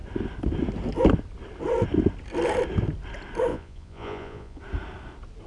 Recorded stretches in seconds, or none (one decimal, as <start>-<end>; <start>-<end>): 0.0-3.5; 4.6-5.5